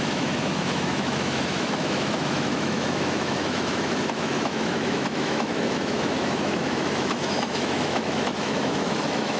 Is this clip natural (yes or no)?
no